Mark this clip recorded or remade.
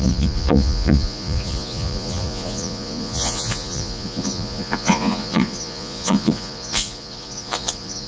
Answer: remade